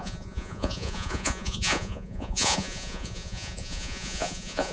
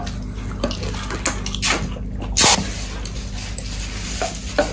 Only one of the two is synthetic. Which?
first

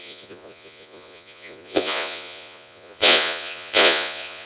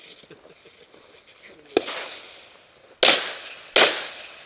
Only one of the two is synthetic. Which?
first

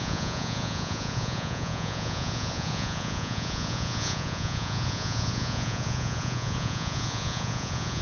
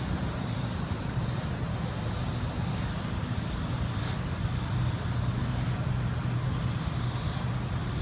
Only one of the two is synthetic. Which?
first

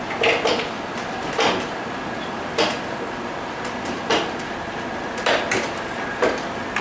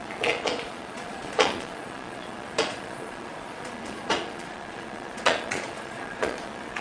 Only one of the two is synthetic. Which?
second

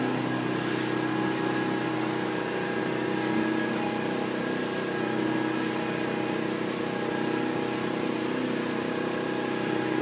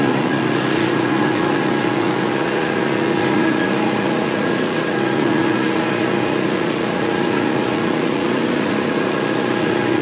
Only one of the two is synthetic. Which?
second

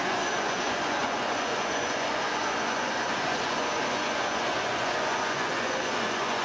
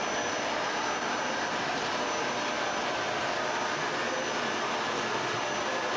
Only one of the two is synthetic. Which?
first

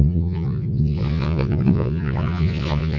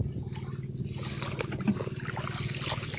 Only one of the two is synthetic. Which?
first